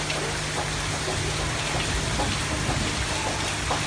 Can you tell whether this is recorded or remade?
recorded